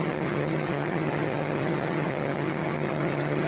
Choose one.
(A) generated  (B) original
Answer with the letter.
A